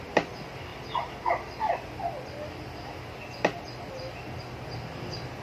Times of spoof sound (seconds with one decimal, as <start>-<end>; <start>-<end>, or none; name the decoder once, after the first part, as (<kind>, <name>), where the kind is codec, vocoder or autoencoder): none